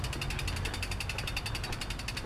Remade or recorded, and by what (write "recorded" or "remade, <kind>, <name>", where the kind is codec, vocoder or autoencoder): recorded